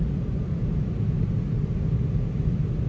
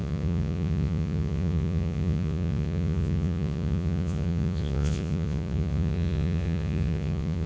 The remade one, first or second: second